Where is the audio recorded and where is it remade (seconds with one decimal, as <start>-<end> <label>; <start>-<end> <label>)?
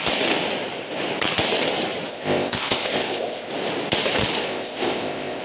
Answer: 0.0-2.1 recorded; 2.1-3.5 remade; 3.5-4.4 recorded; 4.4-5.4 remade